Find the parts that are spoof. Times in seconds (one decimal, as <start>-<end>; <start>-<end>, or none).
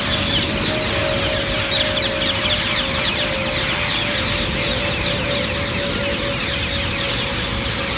none